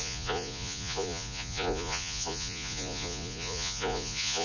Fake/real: fake